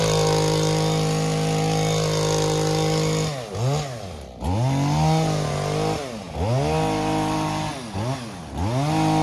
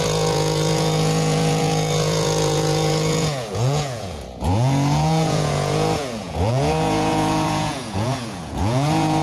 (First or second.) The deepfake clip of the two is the second